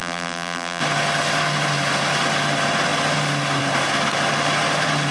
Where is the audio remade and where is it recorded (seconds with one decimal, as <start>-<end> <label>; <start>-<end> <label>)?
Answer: 0.0-0.8 remade; 0.8-5.1 recorded